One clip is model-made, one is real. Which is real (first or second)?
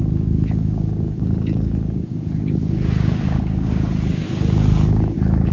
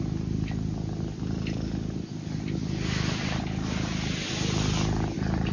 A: second